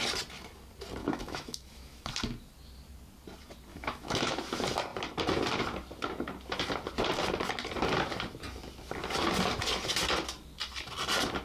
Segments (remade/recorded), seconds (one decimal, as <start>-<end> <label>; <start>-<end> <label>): 0.0-1.0 recorded; 1.0-2.1 remade; 2.1-3.7 recorded; 3.7-4.4 remade; 4.4-11.4 recorded